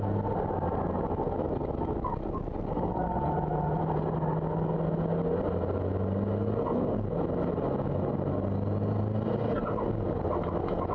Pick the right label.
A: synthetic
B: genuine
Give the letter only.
B